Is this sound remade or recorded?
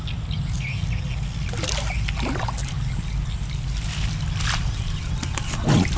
recorded